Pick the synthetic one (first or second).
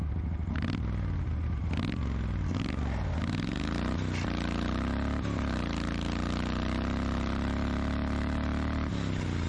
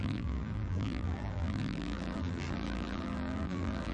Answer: second